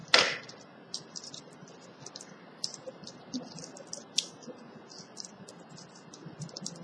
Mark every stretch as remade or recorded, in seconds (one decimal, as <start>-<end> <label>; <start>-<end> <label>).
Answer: 0.0-6.8 remade